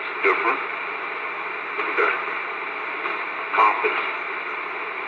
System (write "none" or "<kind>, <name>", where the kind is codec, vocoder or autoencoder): none